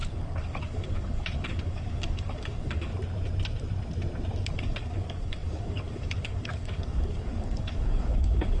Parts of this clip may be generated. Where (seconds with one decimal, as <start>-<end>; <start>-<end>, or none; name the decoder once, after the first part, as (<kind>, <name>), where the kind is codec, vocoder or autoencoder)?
0.0-2.9 (codec, DAC); 4.5-8.6